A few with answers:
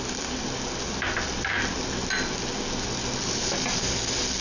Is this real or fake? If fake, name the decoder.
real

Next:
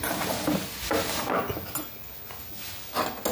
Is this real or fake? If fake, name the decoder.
real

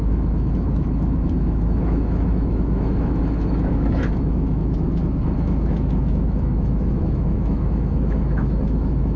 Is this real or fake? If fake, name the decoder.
fake, autoencoder, DAC-VAE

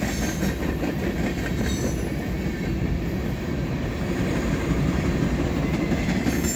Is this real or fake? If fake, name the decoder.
real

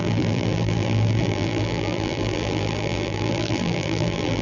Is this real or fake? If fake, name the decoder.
fake, vocoder, BigVGAN v2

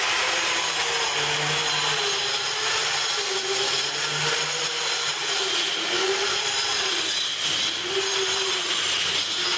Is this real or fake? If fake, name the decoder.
real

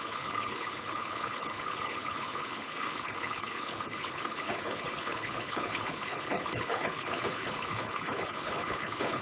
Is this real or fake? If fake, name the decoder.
fake, codec, HILCodec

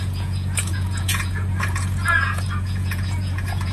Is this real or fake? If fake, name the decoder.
fake, vocoder, Vocos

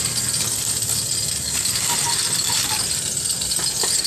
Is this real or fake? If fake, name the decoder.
real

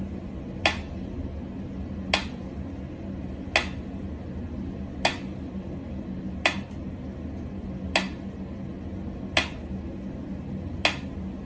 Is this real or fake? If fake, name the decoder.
real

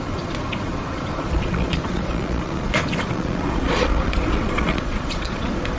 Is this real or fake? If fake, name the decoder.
fake, vocoder, Vocos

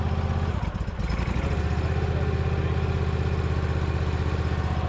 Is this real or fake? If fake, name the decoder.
real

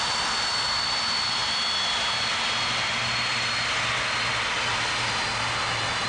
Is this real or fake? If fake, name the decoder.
real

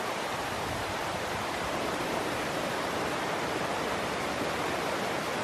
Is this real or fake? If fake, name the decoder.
fake, vocoder, BigVGAN v2